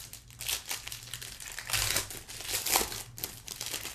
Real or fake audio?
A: real